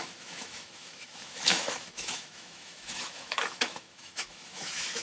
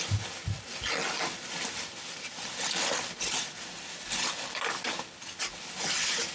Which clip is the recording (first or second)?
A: second